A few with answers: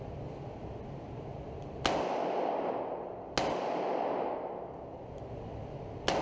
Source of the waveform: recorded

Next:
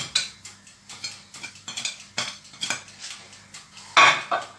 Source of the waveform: recorded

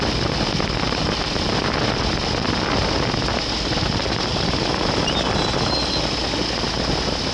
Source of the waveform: recorded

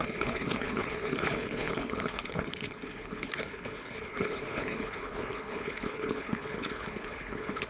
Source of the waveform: remade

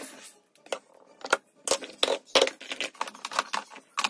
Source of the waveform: recorded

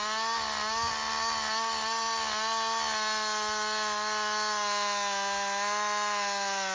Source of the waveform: recorded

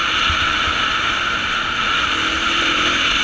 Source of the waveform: recorded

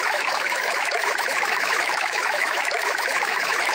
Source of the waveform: remade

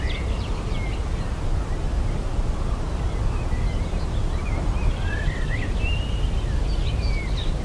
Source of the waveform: recorded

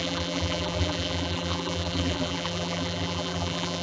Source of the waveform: remade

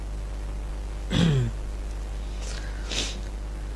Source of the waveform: recorded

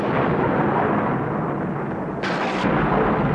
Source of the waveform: recorded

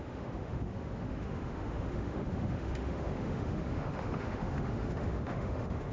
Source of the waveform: remade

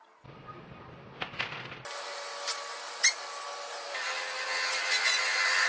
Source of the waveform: recorded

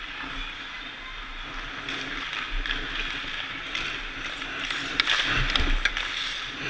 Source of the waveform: recorded